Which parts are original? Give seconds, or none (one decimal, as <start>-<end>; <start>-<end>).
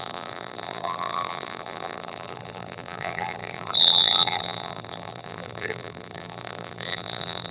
none